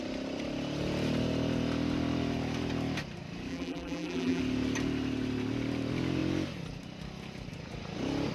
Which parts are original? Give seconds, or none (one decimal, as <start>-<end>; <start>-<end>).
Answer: 0.0-3.5; 4.4-8.3